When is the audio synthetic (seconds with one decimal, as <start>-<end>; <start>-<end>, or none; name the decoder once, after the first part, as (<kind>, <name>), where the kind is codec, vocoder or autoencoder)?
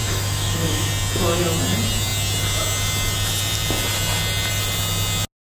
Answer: 0.0-0.9 (autoencoder, DAC-VAE)